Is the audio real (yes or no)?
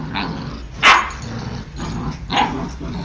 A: yes